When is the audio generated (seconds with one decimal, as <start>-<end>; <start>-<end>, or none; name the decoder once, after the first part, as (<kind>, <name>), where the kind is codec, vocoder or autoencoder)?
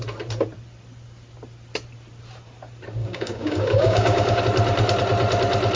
3.0-4.4 (codec, DAC)